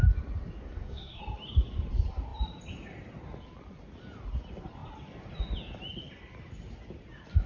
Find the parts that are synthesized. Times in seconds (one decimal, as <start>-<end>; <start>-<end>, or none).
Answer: 0.6-1.2